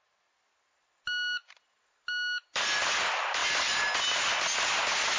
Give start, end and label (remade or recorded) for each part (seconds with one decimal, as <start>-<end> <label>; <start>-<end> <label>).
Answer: 0.0-5.2 recorded